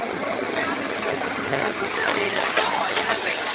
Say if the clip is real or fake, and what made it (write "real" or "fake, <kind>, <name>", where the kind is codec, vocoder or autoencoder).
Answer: fake, vocoder, HiFi-GAN